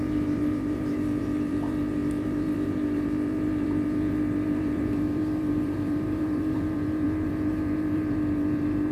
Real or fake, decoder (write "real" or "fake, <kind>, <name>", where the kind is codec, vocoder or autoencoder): fake, vocoder, BigVGAN v2